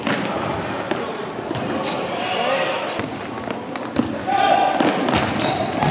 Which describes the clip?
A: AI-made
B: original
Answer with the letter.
B